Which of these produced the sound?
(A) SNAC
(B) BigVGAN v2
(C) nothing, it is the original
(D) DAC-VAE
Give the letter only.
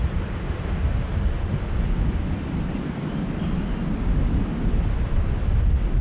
C